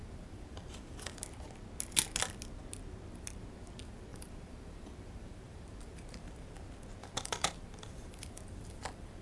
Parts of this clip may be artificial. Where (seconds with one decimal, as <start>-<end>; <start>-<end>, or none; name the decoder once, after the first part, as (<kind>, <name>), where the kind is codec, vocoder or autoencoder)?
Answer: 0.0-1.2 (vocoder, BigVGAN v2); 4.1-6.6; 7.0-9.2